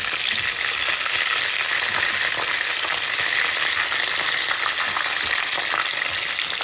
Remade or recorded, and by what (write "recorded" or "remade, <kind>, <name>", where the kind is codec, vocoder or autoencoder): recorded